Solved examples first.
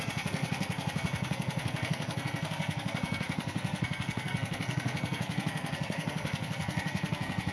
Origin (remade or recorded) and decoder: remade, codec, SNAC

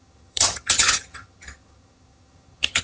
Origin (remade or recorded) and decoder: remade, vocoder, HiFi-GAN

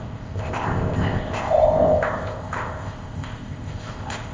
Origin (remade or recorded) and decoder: remade, codec, ZipCodec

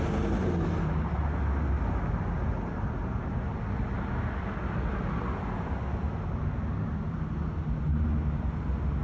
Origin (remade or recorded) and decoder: recorded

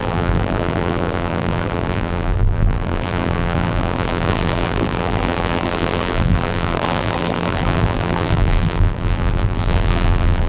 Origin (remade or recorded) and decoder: remade, vocoder, BigVGAN v2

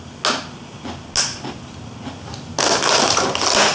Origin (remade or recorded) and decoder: recorded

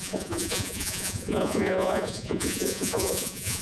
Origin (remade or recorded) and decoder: remade, vocoder, Vocos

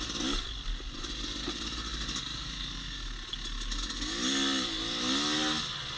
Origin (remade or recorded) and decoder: recorded